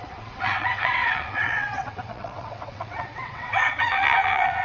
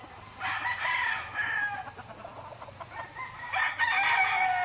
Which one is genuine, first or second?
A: second